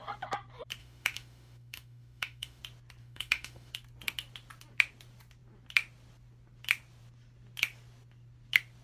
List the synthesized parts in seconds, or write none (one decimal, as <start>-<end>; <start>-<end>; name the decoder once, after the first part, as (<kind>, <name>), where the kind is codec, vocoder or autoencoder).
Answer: 0.8-2.6 (autoencoder, DAC-VAE); 3.0-3.7